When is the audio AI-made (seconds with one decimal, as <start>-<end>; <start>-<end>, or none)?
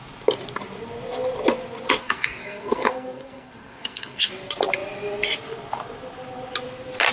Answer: 2.0-4.3